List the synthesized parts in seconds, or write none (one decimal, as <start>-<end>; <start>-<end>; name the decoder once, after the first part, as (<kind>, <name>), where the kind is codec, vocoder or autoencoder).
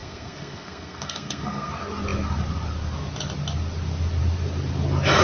0.0-1.7 (codec, SNAC)